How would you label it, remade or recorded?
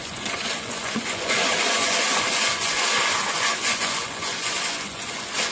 remade